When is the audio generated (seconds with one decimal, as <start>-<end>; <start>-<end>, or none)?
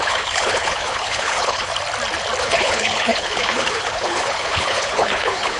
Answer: 0.0-1.7; 2.4-5.6